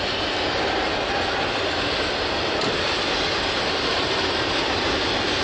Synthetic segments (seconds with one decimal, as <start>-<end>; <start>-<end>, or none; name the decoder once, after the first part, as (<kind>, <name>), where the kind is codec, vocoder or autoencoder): none